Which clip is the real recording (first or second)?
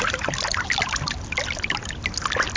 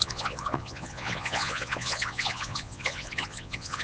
first